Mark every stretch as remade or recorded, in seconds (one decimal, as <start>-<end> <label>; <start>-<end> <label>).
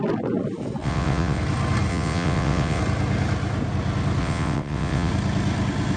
0.0-0.8 recorded; 0.8-1.4 remade; 1.4-1.9 recorded; 1.9-2.8 remade; 2.8-4.2 recorded; 4.2-5.1 remade; 5.1-6.0 recorded